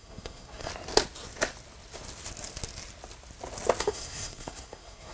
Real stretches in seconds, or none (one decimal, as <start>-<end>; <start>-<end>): 0.7-3.8

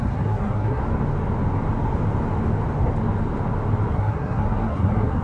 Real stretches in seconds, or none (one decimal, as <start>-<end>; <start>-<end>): 0.8-3.9

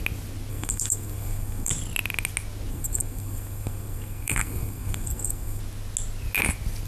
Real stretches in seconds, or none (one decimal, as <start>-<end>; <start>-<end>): 0.0-0.5; 1.7-2.7; 5.6-6.9

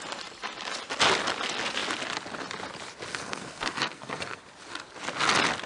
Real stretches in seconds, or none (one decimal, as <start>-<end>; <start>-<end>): 0.0-3.1; 4.4-5.7